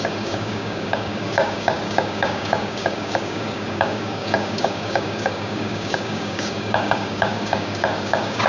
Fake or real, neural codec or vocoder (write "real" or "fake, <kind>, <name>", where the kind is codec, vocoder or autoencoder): fake, codec, DAC